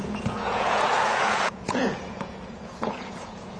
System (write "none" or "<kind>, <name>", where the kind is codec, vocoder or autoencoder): vocoder, Vocos